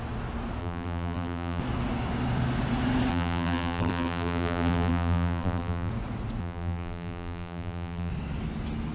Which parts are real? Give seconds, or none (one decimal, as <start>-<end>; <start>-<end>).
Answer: 0.0-0.6; 1.6-3.1; 5.9-6.4; 8.1-8.9